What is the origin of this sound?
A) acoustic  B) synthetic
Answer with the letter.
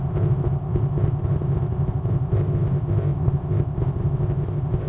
B